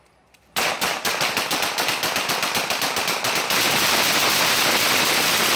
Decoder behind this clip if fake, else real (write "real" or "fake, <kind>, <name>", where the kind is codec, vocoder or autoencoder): real